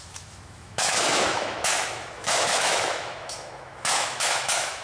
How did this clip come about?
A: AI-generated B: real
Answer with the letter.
A